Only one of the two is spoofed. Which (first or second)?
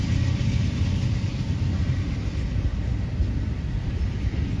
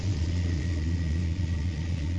second